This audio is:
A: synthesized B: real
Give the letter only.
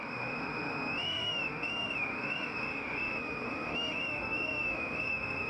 A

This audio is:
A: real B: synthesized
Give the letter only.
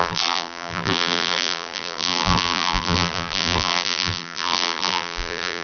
B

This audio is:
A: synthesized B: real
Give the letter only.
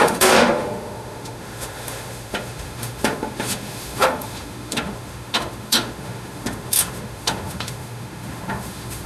A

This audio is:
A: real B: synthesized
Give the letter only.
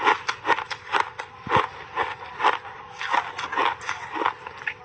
A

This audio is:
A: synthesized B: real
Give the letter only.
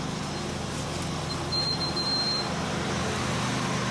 A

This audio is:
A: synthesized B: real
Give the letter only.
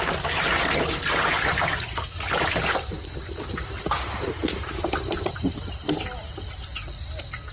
B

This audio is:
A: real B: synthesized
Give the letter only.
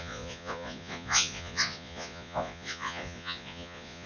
B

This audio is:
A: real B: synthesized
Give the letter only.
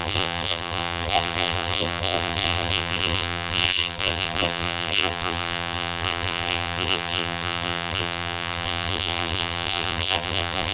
B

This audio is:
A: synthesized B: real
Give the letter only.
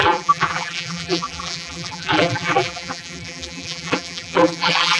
A